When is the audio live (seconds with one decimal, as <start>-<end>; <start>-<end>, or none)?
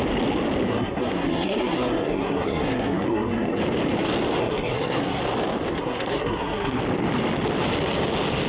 0.0-0.7; 3.6-4.4; 5.2-5.7; 6.8-8.5